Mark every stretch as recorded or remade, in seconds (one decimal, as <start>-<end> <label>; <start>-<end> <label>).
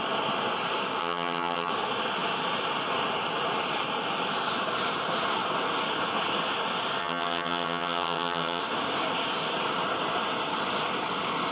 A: 0.0-1.0 recorded; 1.0-1.7 remade; 1.7-7.0 recorded; 7.0-8.6 remade; 8.6-11.5 recorded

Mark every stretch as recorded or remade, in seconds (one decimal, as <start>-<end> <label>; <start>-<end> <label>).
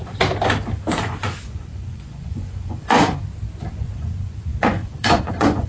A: 0.0-0.9 recorded; 0.9-3.2 remade; 3.2-3.7 recorded; 3.7-5.7 remade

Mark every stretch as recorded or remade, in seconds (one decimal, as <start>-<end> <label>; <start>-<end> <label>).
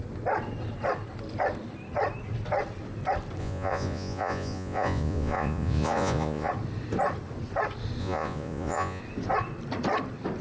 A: 0.0-3.4 recorded; 3.4-6.5 remade; 6.5-8.0 recorded; 8.0-9.0 remade; 9.0-10.4 recorded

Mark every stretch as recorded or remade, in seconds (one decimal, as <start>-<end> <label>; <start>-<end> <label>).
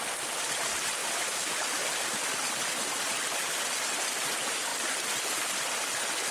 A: 0.0-1.0 recorded; 1.0-3.7 remade; 3.7-6.3 recorded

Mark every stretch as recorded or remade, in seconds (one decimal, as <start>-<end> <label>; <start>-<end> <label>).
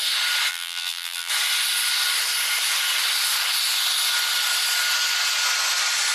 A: 0.0-0.5 recorded; 0.5-1.3 remade; 1.3-6.1 recorded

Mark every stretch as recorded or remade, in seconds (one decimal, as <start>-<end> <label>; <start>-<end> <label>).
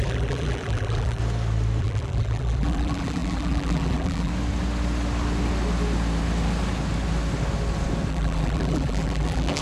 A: 0.0-1.2 remade; 1.2-1.8 recorded; 1.8-4.3 remade; 4.3-8.1 recorded; 8.1-9.6 remade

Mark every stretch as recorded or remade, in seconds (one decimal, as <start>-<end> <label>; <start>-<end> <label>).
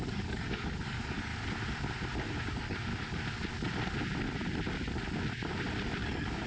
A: 0.0-1.3 remade; 1.3-2.5 recorded; 2.5-2.9 remade; 2.9-6.0 recorded; 6.0-6.5 remade